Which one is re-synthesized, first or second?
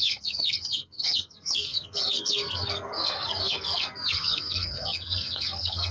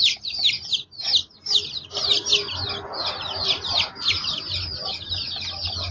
first